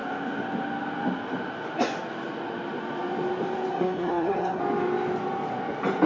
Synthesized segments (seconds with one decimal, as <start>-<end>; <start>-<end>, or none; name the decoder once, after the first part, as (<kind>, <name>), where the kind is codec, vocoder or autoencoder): 3.7-4.6 (codec, SNAC)

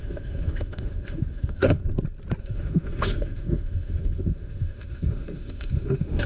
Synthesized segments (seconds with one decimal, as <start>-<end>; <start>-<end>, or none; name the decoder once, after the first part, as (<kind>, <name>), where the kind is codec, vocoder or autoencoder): 0.0-1.8 (autoencoder, DAC-VAE); 2.4-6.3

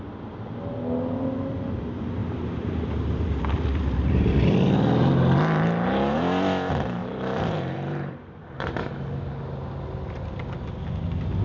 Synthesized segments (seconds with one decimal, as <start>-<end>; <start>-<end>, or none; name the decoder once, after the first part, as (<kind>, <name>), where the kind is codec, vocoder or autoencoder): 2.2-4.3 (vocoder, BigVGAN v2); 7.0-8.7

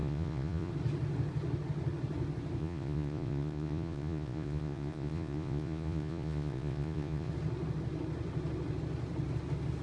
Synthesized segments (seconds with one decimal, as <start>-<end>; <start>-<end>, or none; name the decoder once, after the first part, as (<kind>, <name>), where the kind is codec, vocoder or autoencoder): 0.0-0.7 (vocoder, Vocos); 2.6-7.3

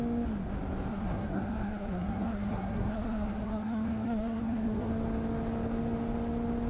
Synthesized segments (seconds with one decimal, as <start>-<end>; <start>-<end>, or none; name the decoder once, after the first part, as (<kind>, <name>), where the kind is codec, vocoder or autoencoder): 0.9-4.9 (codec, SNAC)